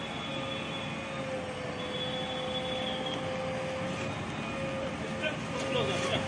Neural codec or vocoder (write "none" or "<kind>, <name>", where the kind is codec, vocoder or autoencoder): none